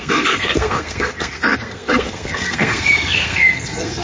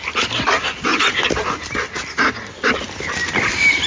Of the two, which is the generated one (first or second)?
first